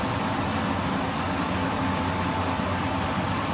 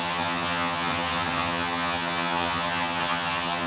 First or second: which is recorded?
first